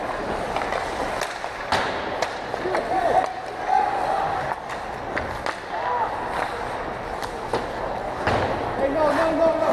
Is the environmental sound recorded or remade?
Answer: recorded